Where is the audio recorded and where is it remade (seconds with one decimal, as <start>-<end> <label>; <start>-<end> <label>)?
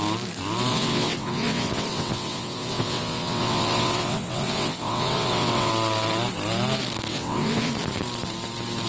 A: 0.0-0.7 recorded; 0.7-5.7 remade; 5.7-7.1 recorded; 7.1-7.7 remade; 7.7-8.9 recorded